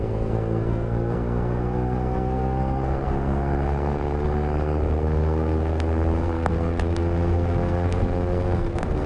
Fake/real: fake